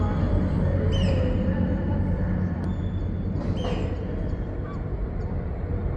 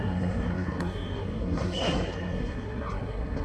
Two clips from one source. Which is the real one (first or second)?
first